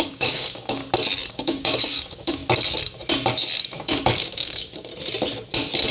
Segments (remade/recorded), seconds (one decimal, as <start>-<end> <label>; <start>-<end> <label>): 0.0-0.8 remade; 0.8-1.3 recorded; 1.3-2.4 remade; 2.4-3.8 recorded; 3.8-4.9 remade; 4.9-5.9 recorded